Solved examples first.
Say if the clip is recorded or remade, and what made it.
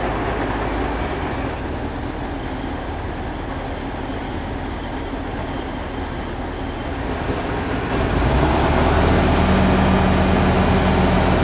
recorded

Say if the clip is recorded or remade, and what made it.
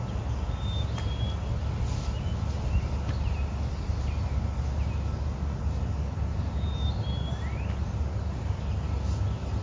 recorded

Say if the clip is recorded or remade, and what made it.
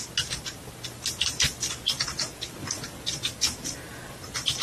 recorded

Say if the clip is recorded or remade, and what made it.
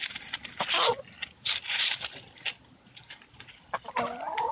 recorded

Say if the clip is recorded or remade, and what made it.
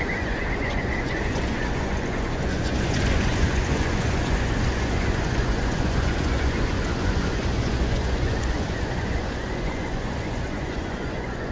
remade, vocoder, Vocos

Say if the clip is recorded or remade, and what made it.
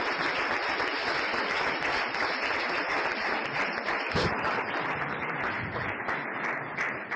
recorded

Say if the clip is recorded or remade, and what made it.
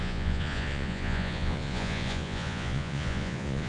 remade, vocoder, Vocos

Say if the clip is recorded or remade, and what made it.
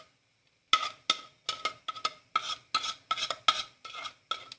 recorded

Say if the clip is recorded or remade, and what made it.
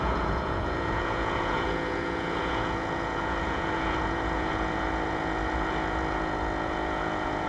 remade, vocoder, Vocos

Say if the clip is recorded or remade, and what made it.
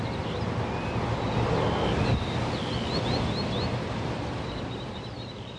recorded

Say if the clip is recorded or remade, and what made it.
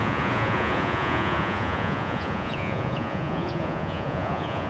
remade, vocoder, Vocos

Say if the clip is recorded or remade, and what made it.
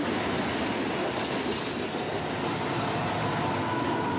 recorded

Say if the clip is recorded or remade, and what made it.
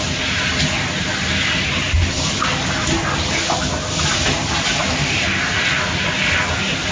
recorded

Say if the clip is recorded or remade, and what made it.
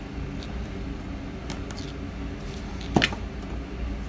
recorded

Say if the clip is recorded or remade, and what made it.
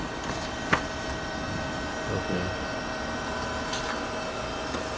recorded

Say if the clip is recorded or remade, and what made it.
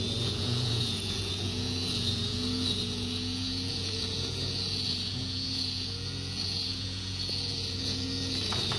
remade, vocoder, Vocos